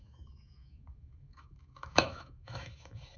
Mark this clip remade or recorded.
remade